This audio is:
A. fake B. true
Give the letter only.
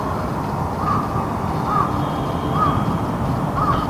B